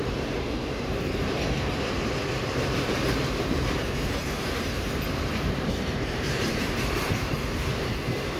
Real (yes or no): no